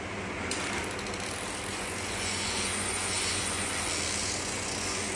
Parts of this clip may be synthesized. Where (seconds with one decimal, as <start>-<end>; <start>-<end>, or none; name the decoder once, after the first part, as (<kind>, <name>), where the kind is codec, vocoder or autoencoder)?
1.7-3.7 (vocoder, Vocos); 4.2-5.2